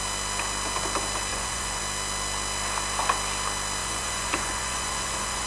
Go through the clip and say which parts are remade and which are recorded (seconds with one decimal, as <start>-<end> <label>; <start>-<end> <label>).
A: 0.0-1.3 recorded; 1.3-1.8 remade; 1.8-3.8 recorded; 3.8-5.5 remade